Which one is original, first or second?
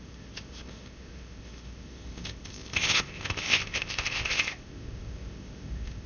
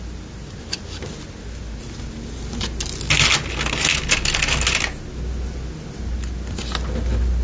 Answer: second